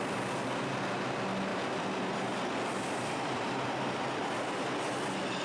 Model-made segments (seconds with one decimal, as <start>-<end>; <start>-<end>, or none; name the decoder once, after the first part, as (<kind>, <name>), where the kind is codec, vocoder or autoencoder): 1.5-4.7 (vocoder, BigVGAN v2)